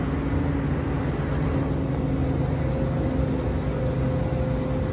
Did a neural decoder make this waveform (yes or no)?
no